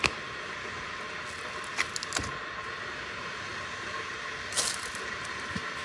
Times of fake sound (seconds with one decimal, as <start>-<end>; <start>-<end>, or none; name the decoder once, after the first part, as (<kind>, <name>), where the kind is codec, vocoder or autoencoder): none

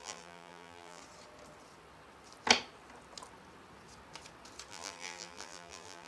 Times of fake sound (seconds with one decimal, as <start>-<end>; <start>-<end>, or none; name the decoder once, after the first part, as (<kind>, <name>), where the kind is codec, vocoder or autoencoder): 0.0-1.0 (vocoder, BigVGAN v2); 4.7-6.1

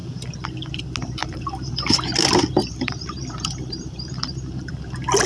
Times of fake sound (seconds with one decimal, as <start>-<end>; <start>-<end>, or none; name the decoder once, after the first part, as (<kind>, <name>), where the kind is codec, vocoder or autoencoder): 1.2-1.7 (vocoder, BigVGAN v2); 2.6-4.7

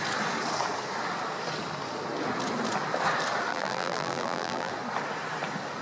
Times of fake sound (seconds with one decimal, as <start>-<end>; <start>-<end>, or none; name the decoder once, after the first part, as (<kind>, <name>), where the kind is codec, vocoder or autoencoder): 3.5-4.7 (vocoder, BigVGAN v2)

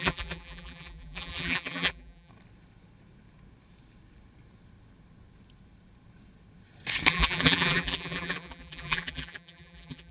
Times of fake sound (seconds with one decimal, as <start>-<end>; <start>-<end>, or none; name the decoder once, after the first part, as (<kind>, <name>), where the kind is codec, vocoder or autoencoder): 0.0-2.3 (vocoder, BigVGAN v2); 7.1-10.1

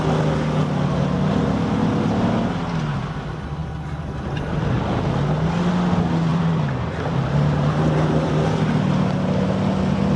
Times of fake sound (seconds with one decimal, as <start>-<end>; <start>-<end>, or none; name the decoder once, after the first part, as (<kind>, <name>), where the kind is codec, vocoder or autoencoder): 3.6-4.3 (vocoder, BigVGAN v2); 6.3-8.3